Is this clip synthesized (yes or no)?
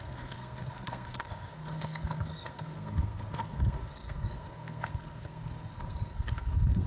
yes